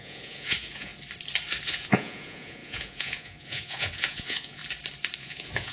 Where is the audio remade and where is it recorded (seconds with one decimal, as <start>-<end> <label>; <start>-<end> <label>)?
0.0-0.9 remade; 0.9-1.7 recorded; 1.7-4.6 remade; 4.6-5.2 recorded; 5.2-5.7 remade